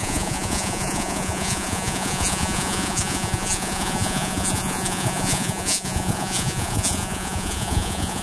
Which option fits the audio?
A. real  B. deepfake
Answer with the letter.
B